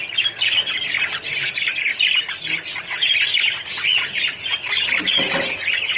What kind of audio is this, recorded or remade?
recorded